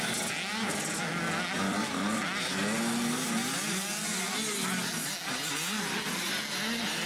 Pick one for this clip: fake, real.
real